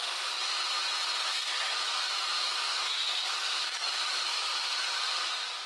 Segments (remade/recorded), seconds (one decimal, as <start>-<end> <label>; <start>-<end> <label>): 0.0-1.5 recorded; 1.5-4.9 remade; 4.9-5.7 recorded